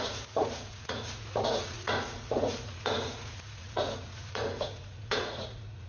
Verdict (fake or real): fake